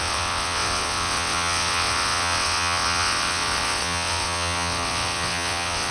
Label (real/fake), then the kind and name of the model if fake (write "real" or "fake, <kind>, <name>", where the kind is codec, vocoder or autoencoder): fake, vocoder, WaveNeXt